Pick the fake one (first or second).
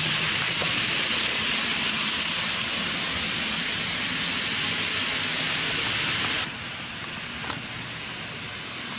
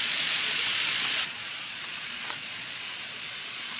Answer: second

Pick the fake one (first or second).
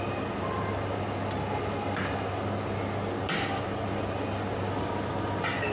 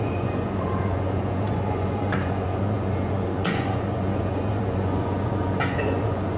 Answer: second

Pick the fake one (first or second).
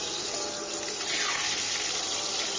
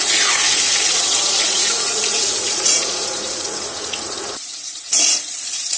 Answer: second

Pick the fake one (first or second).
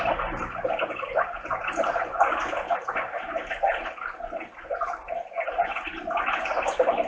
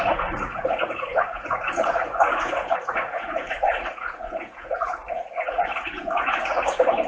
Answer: second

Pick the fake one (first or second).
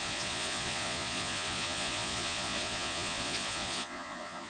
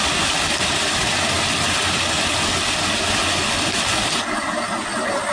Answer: first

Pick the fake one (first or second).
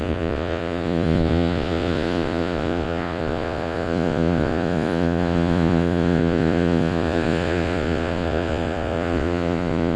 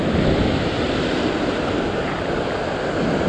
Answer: first